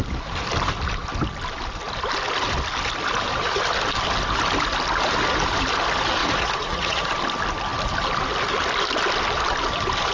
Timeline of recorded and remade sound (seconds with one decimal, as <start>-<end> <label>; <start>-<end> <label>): 0.0-6.2 recorded; 6.2-7.1 remade; 7.1-10.1 recorded